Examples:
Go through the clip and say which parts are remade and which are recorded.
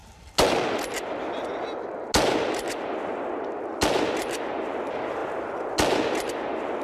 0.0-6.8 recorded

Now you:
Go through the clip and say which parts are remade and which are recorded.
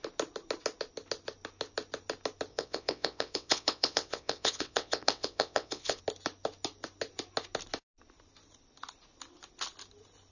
0.0-2.5 recorded; 2.5-6.0 remade; 6.0-10.3 recorded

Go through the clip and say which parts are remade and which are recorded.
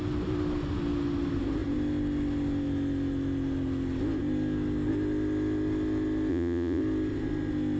0.0-6.3 recorded; 6.3-6.8 remade; 6.8-7.8 recorded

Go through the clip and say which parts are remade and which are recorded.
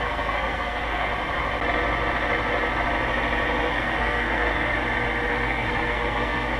0.0-1.1 remade; 1.1-3.7 recorded; 3.7-4.7 remade; 4.7-5.3 recorded; 5.3-6.6 remade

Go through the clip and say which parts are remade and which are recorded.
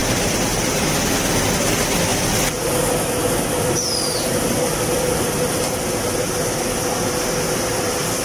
0.0-8.2 recorded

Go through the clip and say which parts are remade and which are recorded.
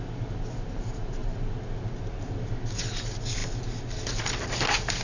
0.0-5.0 recorded